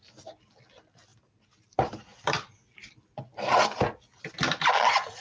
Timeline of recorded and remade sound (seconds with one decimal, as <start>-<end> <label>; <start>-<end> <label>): 0.0-5.2 recorded